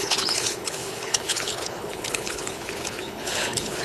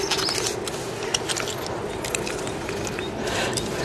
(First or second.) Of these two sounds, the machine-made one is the first